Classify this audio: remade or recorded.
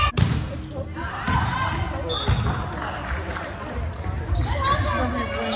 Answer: recorded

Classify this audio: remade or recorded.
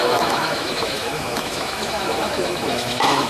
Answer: remade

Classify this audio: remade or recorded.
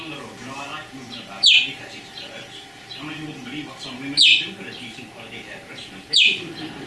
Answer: recorded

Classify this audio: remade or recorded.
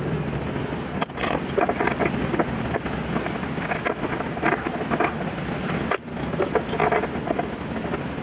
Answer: recorded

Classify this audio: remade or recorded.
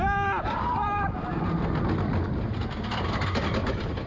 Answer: recorded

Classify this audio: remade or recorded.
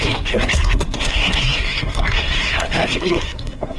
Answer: remade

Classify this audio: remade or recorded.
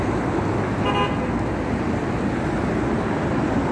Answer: recorded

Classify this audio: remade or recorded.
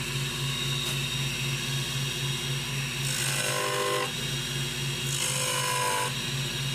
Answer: recorded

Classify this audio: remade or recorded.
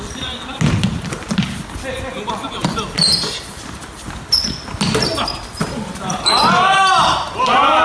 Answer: recorded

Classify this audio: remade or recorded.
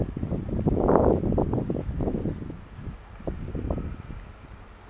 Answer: recorded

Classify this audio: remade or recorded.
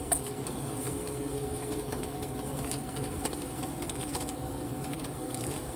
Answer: remade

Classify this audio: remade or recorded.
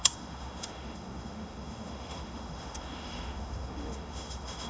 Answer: remade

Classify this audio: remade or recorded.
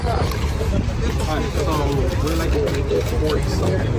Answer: recorded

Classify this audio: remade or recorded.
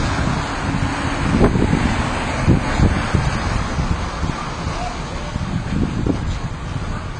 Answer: recorded